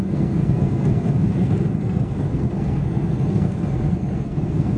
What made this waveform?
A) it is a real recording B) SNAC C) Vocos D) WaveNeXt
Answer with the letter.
B